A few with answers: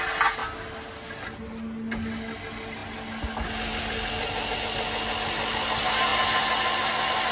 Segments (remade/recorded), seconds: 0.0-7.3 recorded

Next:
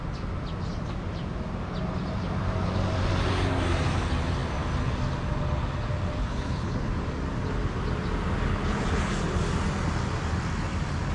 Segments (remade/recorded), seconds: 0.0-6.2 recorded; 6.2-6.9 remade; 6.9-8.5 recorded; 8.5-9.1 remade; 9.1-11.1 recorded